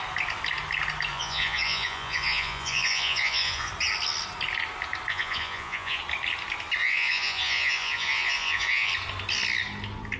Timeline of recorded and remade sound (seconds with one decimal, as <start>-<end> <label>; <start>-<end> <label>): 0.0-1.1 recorded; 1.1-3.7 remade; 3.7-5.1 recorded; 5.1-6.0 remade; 6.0-6.8 recorded; 6.8-8.9 remade; 8.9-10.2 recorded